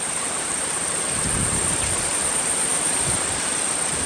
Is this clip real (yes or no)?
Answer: no